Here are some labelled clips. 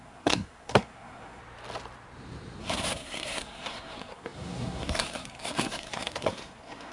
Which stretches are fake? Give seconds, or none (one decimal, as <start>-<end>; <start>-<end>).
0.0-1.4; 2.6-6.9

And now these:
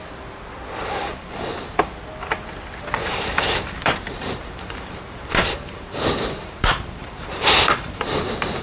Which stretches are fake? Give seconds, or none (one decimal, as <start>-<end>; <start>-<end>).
1.0-1.9; 3.0-8.2

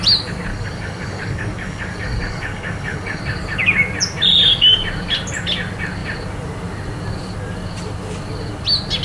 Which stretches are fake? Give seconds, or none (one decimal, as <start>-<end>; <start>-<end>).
0.5-3.2